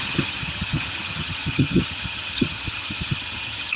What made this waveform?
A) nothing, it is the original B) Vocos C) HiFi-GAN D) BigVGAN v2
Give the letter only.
C